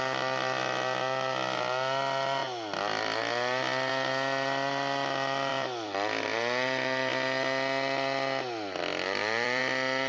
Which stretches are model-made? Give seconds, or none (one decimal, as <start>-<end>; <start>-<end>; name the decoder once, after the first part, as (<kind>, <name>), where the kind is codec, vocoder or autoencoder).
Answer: 5.5-7.1 (vocoder, BigVGAN v2); 8.9-9.6